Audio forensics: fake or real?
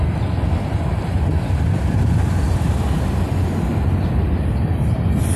real